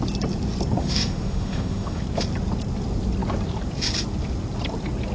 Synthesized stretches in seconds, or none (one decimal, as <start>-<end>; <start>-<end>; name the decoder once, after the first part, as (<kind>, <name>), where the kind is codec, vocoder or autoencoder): 0.8-2.0 (autoencoder, DAC-VAE)